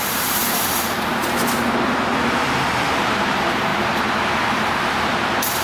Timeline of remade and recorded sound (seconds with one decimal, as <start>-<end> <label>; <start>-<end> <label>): 0.0-1.1 remade; 1.1-2.7 recorded; 2.7-5.6 remade